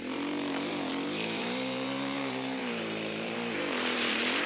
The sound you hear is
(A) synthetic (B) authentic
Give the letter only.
A